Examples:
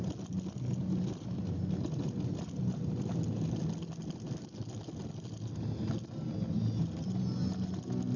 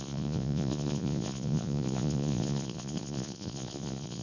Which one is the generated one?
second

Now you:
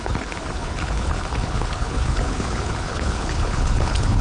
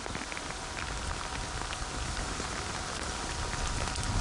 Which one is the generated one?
first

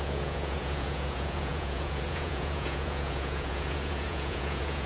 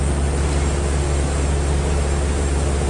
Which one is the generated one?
first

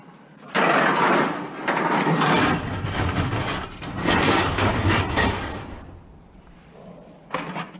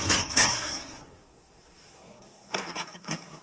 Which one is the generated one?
second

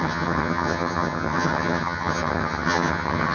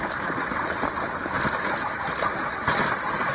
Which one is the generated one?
first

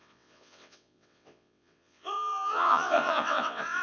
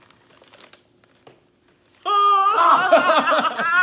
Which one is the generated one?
first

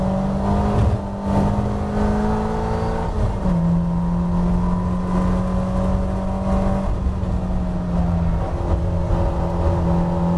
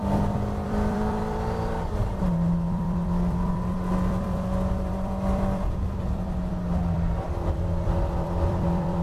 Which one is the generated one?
second